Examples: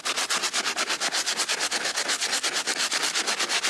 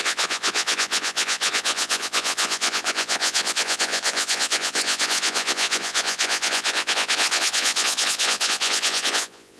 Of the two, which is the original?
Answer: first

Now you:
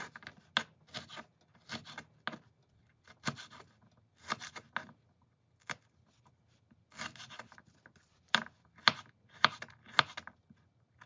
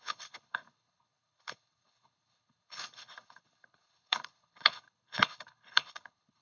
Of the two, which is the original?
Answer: first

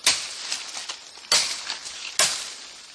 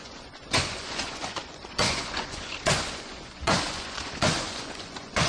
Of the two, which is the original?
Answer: first